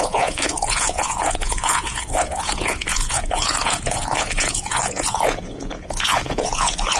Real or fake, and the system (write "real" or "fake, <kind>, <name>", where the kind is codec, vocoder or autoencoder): fake, vocoder, Vocos